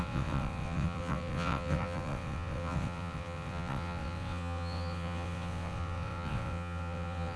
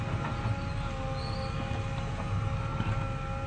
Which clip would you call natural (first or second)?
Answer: second